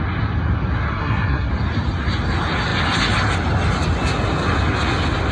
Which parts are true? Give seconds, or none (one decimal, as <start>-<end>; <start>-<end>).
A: 0.0-0.9; 1.5-5.3